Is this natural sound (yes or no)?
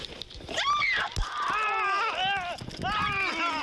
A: yes